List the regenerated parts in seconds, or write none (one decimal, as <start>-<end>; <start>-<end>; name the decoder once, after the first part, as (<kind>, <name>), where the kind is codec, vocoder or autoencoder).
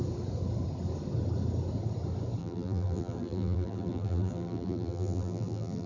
2.4-5.9 (vocoder, BigVGAN v2)